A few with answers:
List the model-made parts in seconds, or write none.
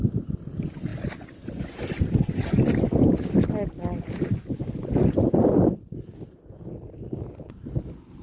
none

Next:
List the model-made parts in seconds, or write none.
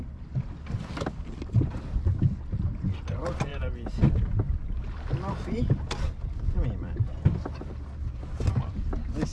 none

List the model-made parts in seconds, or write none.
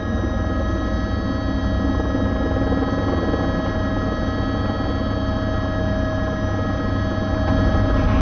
none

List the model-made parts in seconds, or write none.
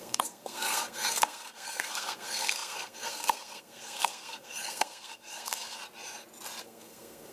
0.0-5.8 (codec, SNAC); 6.6-7.3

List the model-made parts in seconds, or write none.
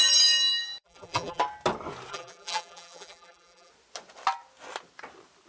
0.8-1.4 (vocoder, BigVGAN v2); 2.1-3.7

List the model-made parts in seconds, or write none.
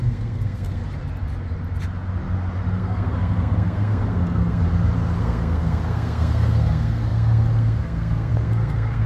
0.0-0.8 (codec, SNAC); 2.7-4.6; 5.2-9.1